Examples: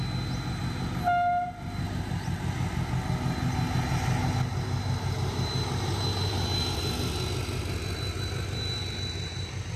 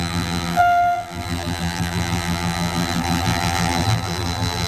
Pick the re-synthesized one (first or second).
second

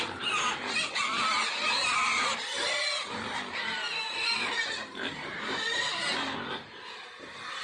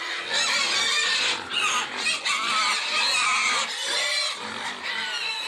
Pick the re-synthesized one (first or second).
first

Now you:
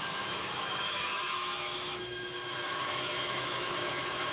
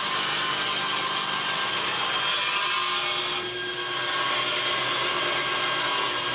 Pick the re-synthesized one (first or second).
first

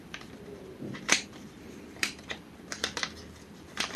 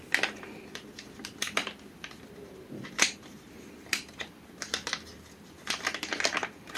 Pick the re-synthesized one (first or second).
first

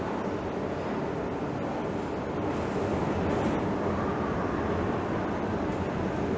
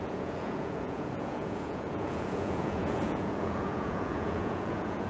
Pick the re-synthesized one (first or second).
second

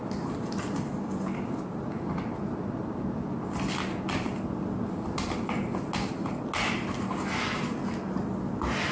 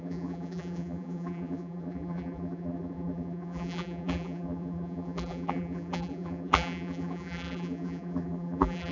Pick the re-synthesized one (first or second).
second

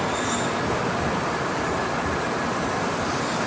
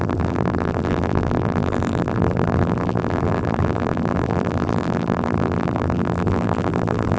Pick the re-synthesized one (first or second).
second